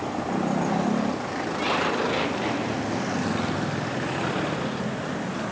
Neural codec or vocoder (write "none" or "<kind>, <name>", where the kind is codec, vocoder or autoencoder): none